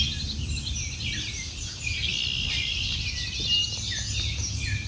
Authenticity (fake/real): real